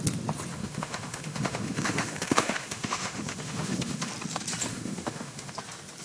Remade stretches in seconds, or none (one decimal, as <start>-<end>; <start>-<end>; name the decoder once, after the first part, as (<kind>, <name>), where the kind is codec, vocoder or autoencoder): 0.5-4.1 (autoencoder, DAC-VAE); 4.7-5.5